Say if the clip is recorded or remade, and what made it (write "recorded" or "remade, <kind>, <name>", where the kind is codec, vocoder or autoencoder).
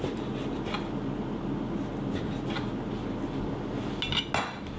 recorded